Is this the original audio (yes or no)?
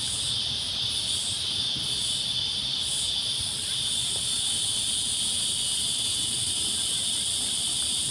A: yes